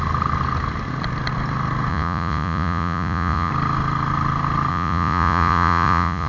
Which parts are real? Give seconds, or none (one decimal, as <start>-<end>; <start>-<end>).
0.0-1.9; 3.5-4.7

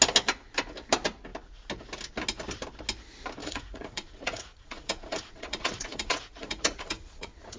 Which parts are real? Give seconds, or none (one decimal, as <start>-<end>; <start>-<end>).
0.0-3.4

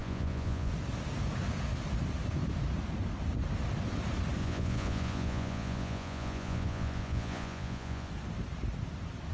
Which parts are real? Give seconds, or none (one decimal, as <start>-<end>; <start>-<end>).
0.7-4.4; 8.1-9.3

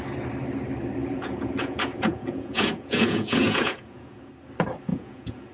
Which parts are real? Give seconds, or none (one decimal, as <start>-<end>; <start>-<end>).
0.0-1.0; 4.3-4.9